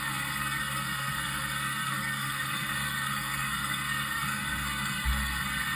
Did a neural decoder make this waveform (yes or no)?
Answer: yes